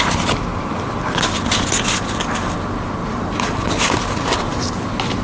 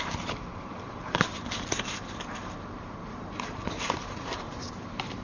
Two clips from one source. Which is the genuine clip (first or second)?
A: first